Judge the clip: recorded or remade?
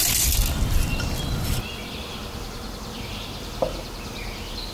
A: recorded